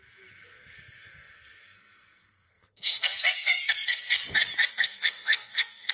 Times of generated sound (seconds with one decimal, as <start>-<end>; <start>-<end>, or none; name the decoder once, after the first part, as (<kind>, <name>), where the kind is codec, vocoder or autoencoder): 0.0-4.2 (codec, SNAC); 4.7-5.9